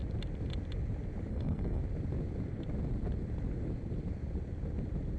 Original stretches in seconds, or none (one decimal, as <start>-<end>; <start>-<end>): 0.0-1.3; 1.8-5.2